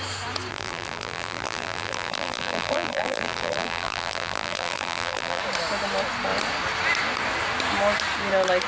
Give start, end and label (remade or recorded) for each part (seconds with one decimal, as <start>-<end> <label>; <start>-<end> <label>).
0.0-0.5 recorded; 0.5-5.4 remade; 5.4-8.7 recorded